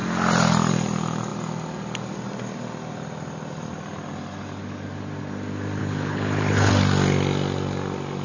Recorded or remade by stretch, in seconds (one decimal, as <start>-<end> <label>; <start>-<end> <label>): 0.0-5.8 recorded; 5.8-6.7 remade; 6.7-8.2 recorded